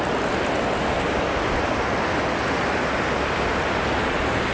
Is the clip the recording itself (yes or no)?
yes